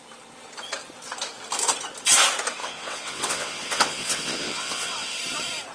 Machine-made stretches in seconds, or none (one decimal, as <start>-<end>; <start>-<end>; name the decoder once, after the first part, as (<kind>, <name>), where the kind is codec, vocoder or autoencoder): 2.6-5.2 (vocoder, WaveNeXt)